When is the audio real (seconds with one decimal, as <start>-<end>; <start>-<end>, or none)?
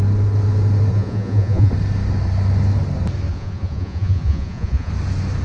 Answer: 0.0-0.9; 1.7-3.3; 4.9-5.4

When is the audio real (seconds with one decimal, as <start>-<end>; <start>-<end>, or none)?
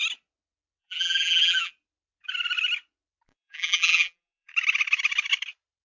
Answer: 0.0-0.8; 1.7-3.3; 4.5-5.8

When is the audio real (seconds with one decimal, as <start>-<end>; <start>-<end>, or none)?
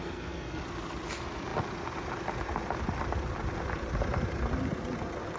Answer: 0.6-5.4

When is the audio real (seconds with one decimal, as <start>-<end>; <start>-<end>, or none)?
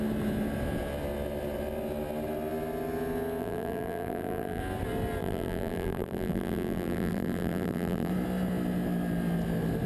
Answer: 0.0-3.4; 4.6-5.2; 8.1-9.9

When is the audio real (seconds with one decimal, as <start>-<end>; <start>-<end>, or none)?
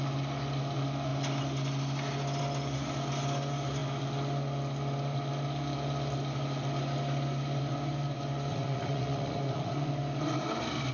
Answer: 0.0-8.5; 9.9-10.9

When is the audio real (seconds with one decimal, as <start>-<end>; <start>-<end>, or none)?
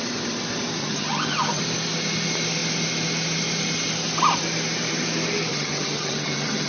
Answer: 0.0-0.8; 1.6-5.5